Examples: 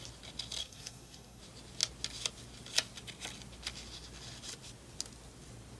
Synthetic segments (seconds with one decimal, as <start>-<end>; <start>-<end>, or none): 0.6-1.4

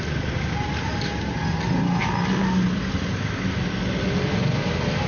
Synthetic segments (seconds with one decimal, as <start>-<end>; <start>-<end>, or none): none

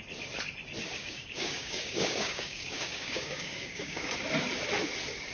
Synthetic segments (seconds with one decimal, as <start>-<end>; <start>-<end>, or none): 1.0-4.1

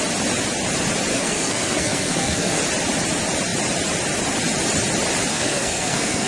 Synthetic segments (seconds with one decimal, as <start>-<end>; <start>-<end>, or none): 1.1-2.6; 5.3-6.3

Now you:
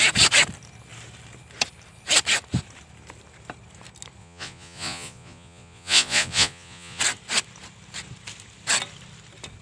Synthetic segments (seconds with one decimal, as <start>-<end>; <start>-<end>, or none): 4.2-7.0

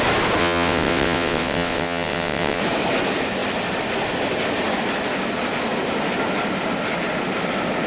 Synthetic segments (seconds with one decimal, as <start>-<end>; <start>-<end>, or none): 0.4-2.6

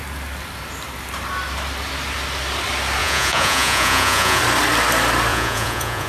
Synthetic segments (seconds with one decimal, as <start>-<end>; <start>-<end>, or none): 3.0-4.4; 5.3-6.1

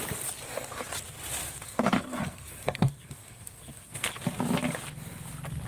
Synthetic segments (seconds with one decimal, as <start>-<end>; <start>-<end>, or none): 1.4-4.2